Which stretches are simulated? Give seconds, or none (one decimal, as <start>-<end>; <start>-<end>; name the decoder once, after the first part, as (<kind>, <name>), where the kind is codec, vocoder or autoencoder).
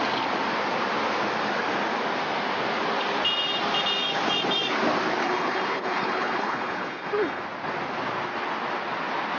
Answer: 5.2-7.4 (codec, HILCodec)